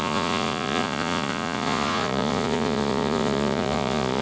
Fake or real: fake